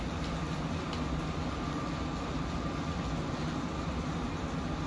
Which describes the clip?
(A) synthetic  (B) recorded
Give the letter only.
B